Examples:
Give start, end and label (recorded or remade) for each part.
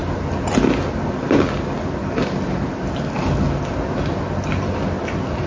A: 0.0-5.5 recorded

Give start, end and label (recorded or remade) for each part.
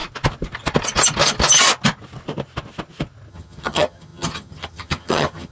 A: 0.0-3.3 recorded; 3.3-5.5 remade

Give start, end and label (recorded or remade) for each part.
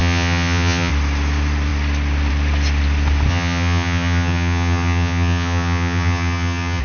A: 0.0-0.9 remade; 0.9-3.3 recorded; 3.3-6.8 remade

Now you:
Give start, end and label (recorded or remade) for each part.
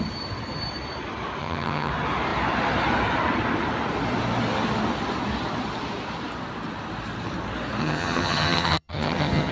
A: 0.0-1.4 recorded; 1.4-1.9 remade; 1.9-7.8 recorded; 7.8-9.5 remade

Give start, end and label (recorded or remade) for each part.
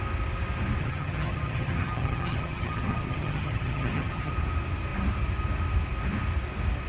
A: 0.0-0.8 recorded; 0.8-4.3 remade; 4.3-6.9 recorded